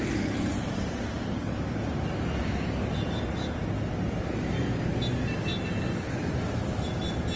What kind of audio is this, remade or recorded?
recorded